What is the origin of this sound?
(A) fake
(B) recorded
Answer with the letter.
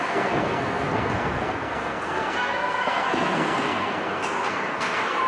A